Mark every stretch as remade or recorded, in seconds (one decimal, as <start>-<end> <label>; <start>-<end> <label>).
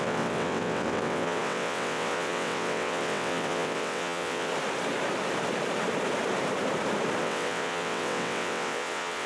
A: 0.0-4.5 remade; 4.5-7.2 recorded; 7.2-9.3 remade